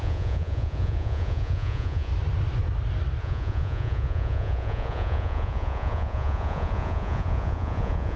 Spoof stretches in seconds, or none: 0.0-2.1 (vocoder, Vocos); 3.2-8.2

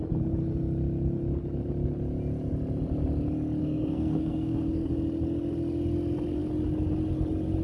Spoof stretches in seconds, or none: 3.6-4.9 (codec, SNAC)

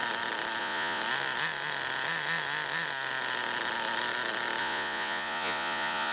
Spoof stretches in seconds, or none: 0.6-1.0 (vocoder, Vocos); 4.6-6.1

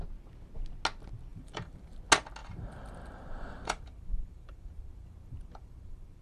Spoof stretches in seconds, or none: 1.3-1.9 (vocoder, BigVGAN v2); 2.4-6.2

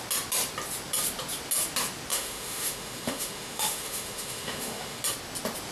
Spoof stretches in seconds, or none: 2.1-5.0 (autoencoder, DAC-VAE)

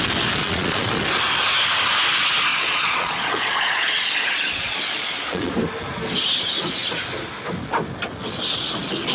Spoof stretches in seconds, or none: 0.4-1.0 (vocoder, Vocos); 2.5-5.5

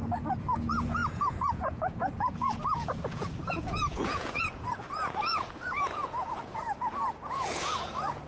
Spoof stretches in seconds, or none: 0.0-8.3 (vocoder, Vocos)

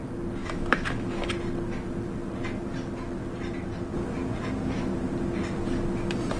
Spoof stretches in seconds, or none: 0.4-1.3 (autoencoder, DAC-VAE)